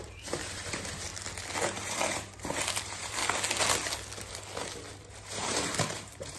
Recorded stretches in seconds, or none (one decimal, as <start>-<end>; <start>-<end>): 1.1-1.6; 3.2-5.1